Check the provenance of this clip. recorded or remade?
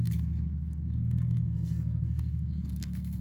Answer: remade